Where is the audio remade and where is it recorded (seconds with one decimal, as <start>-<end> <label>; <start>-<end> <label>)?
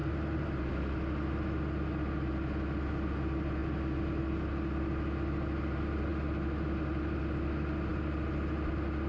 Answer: 0.0-9.1 recorded